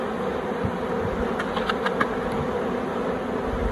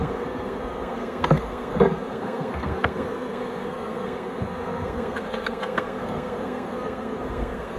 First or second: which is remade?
second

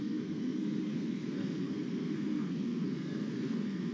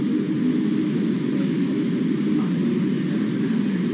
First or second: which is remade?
first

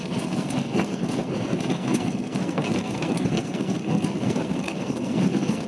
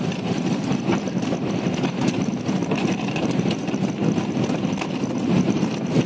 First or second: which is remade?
first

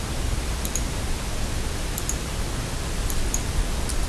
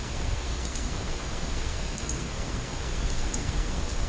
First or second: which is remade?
second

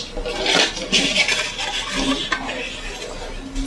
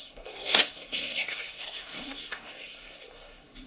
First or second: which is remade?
second